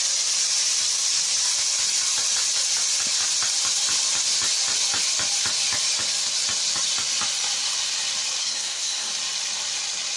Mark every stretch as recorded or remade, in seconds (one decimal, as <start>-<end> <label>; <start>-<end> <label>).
0.0-8.4 recorded; 8.4-9.1 remade; 9.1-10.2 recorded